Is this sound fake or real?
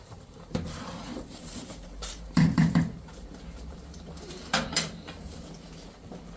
fake